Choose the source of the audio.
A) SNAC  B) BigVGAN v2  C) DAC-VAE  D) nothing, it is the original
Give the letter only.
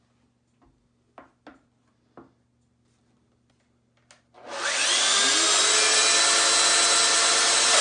D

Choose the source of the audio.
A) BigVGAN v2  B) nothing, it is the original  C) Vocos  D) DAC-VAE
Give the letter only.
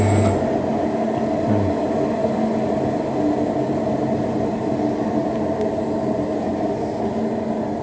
B